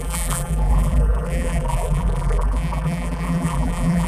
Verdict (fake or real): fake